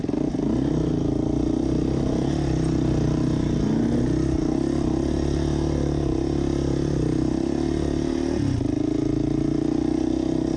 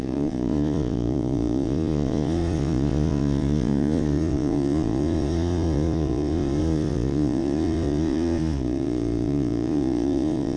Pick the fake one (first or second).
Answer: second